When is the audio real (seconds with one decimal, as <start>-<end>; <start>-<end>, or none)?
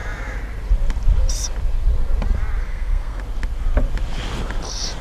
0.0-2.6; 3.2-5.0